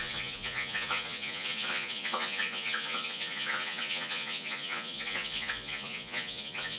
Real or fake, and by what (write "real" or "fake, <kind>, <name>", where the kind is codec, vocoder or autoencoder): fake, vocoder, Vocos